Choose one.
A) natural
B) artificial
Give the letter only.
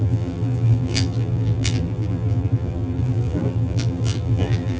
B